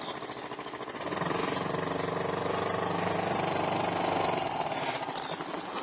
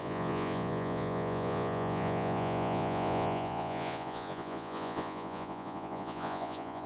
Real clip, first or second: first